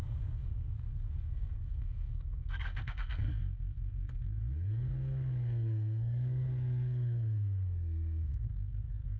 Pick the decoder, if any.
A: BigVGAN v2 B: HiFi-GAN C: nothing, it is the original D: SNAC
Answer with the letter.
D